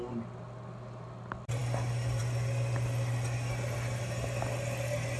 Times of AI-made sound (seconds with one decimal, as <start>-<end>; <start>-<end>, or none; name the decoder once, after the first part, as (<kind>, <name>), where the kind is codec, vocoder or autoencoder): none